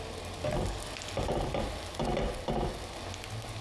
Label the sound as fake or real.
real